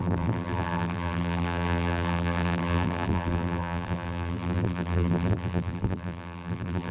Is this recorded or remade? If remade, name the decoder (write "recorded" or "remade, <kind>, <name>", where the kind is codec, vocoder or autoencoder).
remade, vocoder, BigVGAN v2